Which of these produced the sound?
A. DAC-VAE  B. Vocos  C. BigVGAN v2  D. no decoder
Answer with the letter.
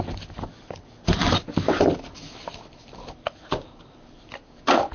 D